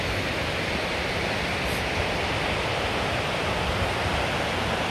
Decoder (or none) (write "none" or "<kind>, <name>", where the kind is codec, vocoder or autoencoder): none